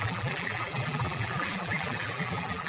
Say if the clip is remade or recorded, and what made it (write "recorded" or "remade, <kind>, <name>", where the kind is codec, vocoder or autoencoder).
remade, vocoder, BigVGAN v2